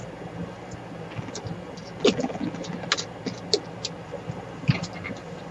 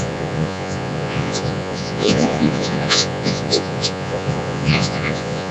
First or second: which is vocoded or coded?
second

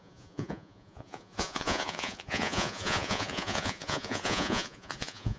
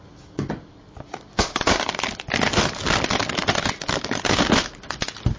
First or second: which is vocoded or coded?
first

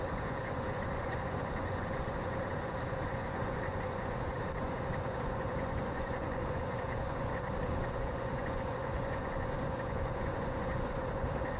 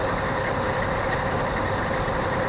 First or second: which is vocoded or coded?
first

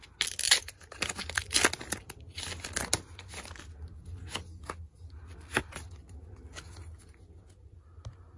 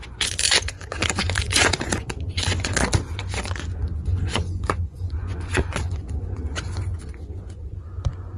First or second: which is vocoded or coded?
second